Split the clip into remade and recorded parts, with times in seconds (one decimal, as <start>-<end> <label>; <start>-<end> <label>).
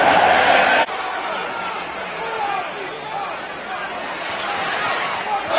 0.0-5.6 recorded